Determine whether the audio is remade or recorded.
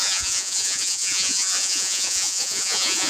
remade